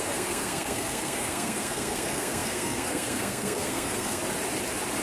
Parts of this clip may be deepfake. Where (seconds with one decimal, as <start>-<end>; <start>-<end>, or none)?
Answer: 0.0-4.2